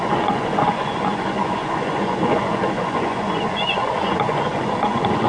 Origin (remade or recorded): remade